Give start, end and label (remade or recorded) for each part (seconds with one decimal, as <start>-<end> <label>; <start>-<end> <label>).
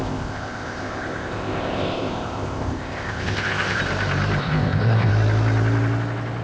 0.0-3.8 remade; 3.8-4.4 recorded; 4.4-5.1 remade; 5.1-6.4 recorded